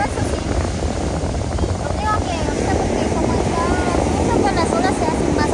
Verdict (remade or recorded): recorded